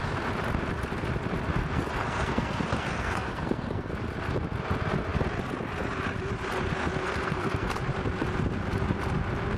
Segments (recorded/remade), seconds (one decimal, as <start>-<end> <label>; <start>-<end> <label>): 0.0-1.6 recorded; 1.6-3.9 remade; 3.9-7.0 recorded; 7.0-7.7 remade; 7.7-9.6 recorded